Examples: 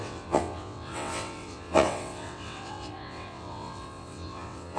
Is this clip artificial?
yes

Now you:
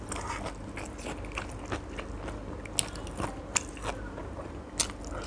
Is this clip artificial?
no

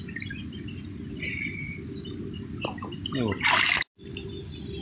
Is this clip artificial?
no